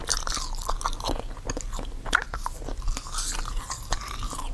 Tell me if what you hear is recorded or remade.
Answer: recorded